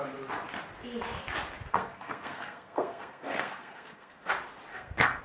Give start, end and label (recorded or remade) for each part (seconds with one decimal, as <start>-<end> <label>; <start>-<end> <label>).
0.0-1.7 recorded; 1.7-4.3 remade; 4.3-4.7 recorded; 4.7-5.2 remade

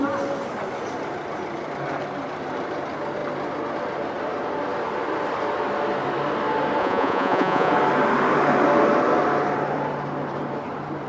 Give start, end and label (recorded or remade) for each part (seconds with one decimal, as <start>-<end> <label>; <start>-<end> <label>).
0.0-6.8 recorded; 6.8-7.7 remade; 7.7-11.1 recorded